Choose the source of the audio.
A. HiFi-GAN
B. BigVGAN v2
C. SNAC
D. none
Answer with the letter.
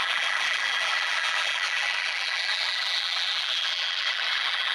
B